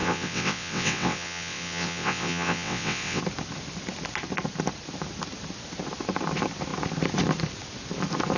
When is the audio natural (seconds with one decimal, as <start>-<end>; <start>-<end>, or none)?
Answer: 3.2-8.4